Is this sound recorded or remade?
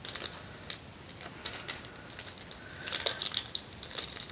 recorded